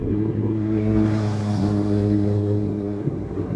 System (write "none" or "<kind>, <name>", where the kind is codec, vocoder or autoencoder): codec, SNAC